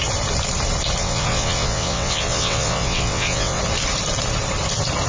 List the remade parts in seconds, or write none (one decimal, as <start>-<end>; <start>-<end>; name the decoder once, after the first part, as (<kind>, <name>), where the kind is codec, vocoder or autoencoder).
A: 1.0-3.6 (vocoder, WaveNeXt)